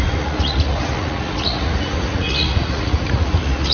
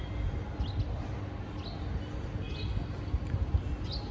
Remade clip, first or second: first